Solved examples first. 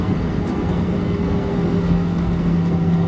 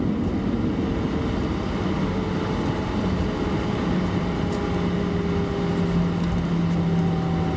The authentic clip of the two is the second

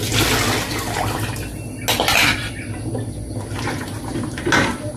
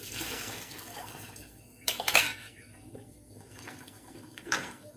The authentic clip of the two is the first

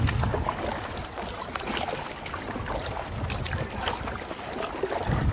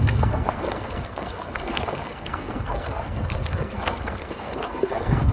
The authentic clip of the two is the first